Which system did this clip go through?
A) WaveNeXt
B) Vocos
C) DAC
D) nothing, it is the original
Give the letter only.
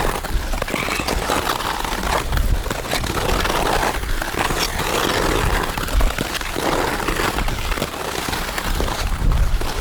D